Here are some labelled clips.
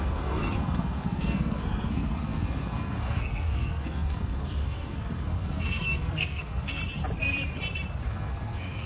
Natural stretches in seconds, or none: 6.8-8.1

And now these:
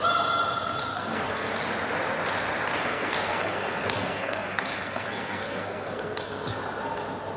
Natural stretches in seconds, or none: 0.0-0.9; 1.5-2.8; 6.6-7.4

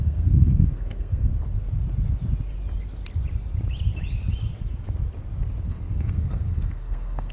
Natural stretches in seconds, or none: 1.3-5.7

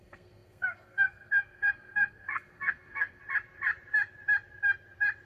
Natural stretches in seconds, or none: 3.2-5.3

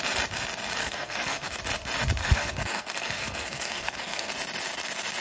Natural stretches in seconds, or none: 0.0-0.8; 1.6-2.2; 4.3-5.2

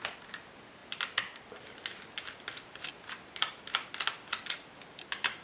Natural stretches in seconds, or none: 0.0-5.4

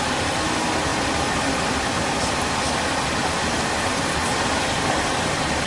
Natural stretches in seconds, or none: 0.0-5.7